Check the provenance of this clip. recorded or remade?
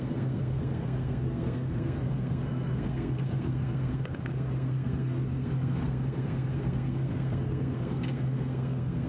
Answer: remade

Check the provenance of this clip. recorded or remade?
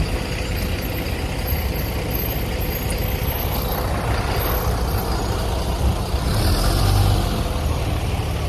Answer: recorded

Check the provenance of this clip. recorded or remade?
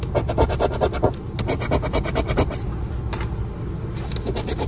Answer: recorded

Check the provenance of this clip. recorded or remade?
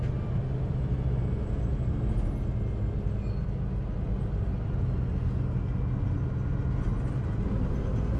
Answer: recorded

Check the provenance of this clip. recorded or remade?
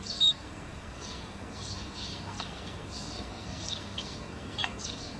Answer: remade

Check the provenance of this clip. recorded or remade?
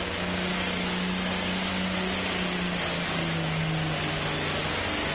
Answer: recorded